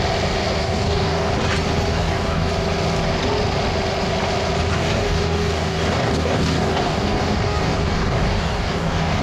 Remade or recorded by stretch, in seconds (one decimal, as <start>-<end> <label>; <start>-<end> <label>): 0.0-0.6 recorded; 0.6-1.3 remade; 1.3-1.9 recorded; 1.9-2.5 remade; 2.5-4.7 recorded; 4.7-9.2 remade